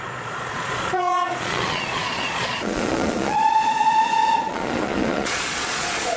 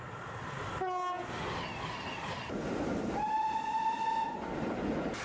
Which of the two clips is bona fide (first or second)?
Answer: second